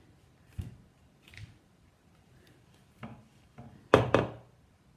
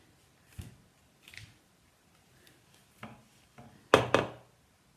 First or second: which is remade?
first